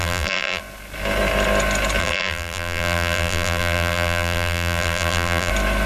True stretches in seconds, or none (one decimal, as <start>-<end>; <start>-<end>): 0.6-2.0; 5.5-5.9